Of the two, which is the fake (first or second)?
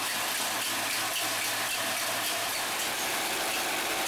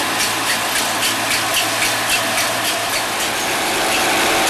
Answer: first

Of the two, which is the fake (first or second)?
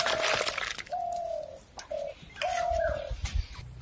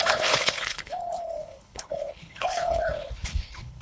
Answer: second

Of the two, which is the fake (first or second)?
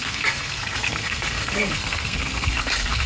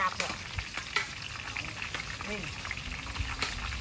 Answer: first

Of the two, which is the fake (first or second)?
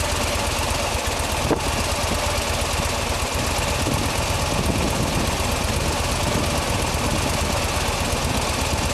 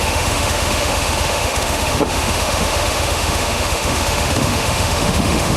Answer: second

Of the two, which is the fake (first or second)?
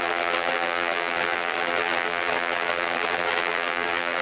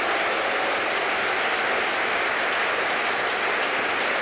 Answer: first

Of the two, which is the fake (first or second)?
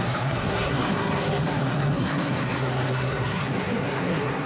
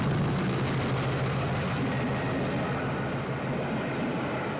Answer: first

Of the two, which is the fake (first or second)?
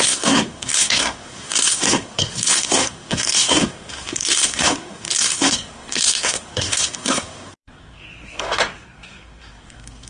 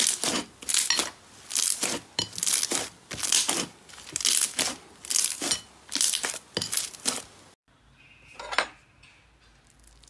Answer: first